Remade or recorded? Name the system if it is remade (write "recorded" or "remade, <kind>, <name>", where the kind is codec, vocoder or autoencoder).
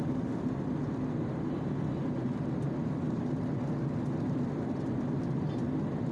recorded